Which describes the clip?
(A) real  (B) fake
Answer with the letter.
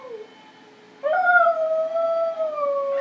A